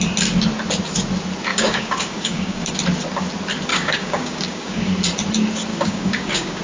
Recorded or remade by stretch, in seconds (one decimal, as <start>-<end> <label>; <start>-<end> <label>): 0.0-1.5 recorded; 1.5-2.7 remade; 2.7-3.7 recorded; 3.7-4.9 remade; 4.9-5.7 recorded; 5.7-6.6 remade